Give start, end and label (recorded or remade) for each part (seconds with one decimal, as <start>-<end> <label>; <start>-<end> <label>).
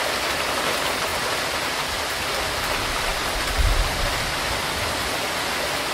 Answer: 0.0-5.9 recorded